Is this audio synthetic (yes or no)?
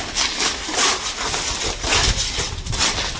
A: no